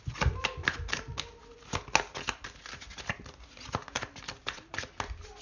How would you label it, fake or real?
real